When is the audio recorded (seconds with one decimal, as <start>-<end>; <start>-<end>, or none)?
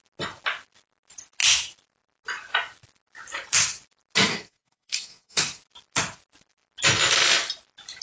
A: 0.0-4.3; 5.6-8.0